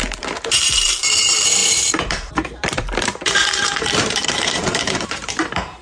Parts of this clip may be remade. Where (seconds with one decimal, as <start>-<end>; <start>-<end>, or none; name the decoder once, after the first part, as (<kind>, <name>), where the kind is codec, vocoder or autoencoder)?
0.0-5.8 (vocoder, BigVGAN v2)